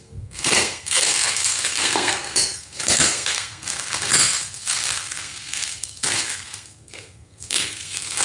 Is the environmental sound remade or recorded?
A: remade